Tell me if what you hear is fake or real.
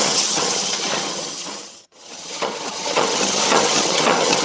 fake